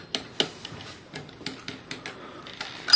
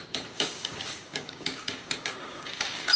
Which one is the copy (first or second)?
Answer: second